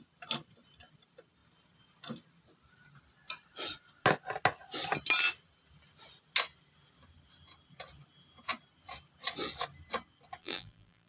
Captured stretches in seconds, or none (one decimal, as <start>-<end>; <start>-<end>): 0.0-10.4